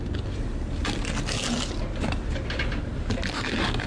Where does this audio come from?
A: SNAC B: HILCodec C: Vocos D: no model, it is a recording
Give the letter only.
D